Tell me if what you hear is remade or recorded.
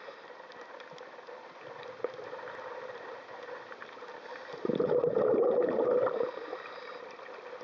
recorded